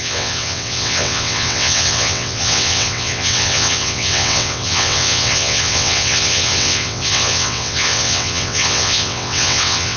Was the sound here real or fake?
fake